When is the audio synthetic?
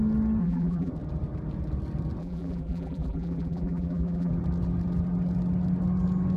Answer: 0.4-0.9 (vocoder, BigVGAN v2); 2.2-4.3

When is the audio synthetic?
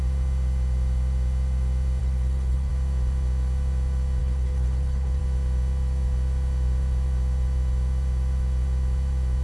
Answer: 2.0-2.7 (codec, HILCodec); 4.2-5.2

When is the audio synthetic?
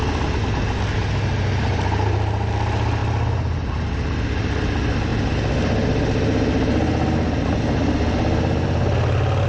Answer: none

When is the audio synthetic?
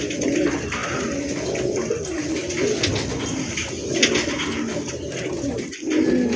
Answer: none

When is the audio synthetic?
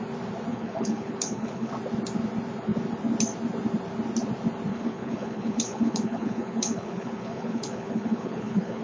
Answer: 0.5-1.7 (codec, HILCodec); 4.7-8.8